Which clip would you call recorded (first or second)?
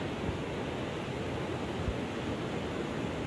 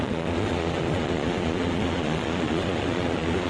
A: first